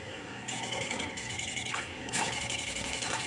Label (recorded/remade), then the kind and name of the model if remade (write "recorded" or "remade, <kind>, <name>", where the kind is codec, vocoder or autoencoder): remade, codec, SNAC